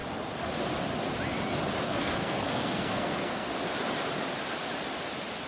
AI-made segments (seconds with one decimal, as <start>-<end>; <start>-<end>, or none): 1.8-3.5